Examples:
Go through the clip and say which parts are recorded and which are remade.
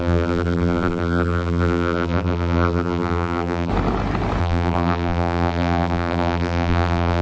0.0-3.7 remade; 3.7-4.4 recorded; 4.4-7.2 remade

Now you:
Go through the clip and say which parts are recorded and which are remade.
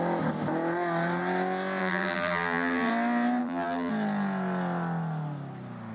0.0-1.8 recorded; 1.8-2.9 remade; 2.9-3.4 recorded; 3.4-3.9 remade; 3.9-5.9 recorded